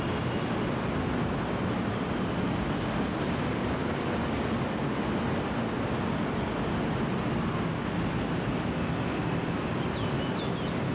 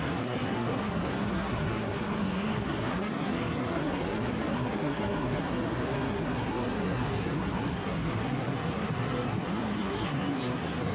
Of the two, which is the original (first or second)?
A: first